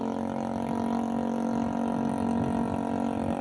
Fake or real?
real